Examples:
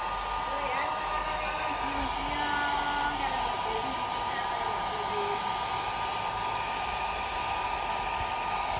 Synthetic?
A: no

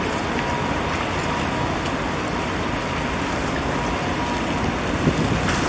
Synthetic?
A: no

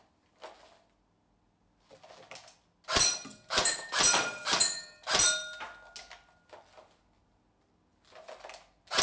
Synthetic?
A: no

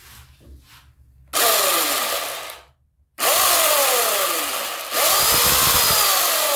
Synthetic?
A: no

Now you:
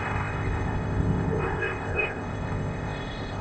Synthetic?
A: yes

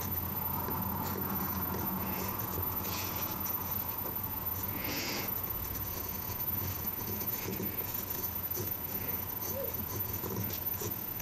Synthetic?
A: yes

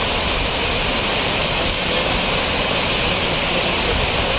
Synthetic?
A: no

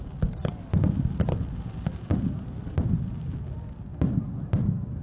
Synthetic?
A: no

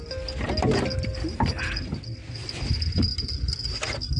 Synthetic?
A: no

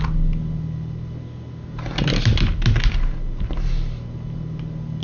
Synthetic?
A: no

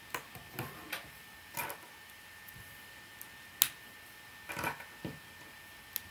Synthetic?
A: no